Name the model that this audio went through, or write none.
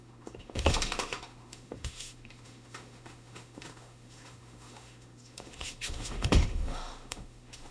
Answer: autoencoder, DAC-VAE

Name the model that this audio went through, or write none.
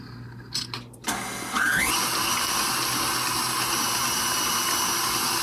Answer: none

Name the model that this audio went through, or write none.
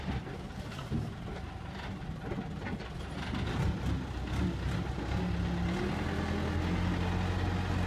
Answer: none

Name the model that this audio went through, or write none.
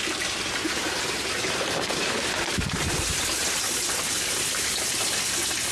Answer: vocoder, BigVGAN v2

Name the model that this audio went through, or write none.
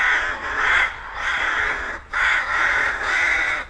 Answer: vocoder, Vocos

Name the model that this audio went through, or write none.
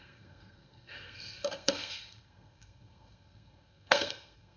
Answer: codec, SNAC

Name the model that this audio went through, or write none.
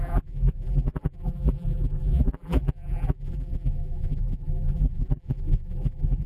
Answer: vocoder, BigVGAN v2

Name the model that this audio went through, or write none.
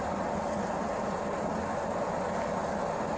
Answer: none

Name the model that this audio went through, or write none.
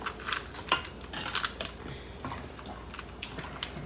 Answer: none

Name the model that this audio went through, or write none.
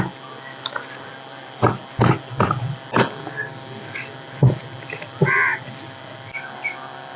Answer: none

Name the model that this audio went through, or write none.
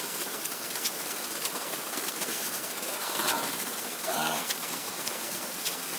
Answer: codec, SNAC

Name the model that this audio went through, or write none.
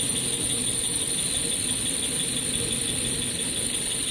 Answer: none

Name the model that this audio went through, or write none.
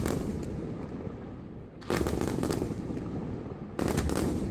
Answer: none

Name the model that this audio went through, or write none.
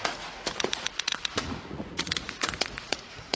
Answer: vocoder, Vocos